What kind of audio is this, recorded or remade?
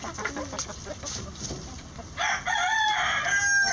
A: recorded